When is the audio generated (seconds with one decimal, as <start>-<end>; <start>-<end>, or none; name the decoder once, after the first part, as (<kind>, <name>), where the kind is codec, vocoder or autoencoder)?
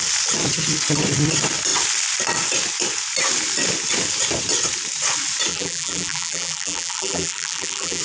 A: 5.5-8.0 (vocoder, BigVGAN v2)